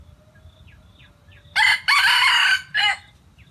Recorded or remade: recorded